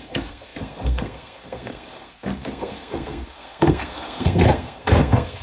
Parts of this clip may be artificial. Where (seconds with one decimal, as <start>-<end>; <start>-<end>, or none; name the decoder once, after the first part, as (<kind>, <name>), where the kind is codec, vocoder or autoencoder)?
0.0-5.4 (codec, SNAC)